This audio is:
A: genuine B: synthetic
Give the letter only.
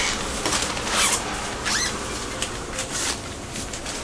A